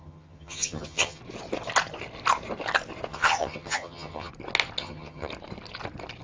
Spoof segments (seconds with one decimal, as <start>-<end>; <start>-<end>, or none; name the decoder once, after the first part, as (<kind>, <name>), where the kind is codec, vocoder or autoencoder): 0.0-1.2 (vocoder, HiFi-GAN); 3.1-4.3; 4.8-5.3